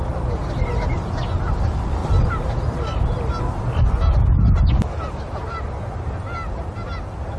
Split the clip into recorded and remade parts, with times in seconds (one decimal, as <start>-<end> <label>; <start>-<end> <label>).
0.0-7.4 recorded